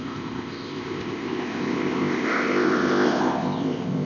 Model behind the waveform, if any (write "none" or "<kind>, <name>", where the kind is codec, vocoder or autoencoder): codec, ZipCodec